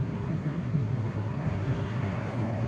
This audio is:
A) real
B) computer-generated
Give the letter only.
B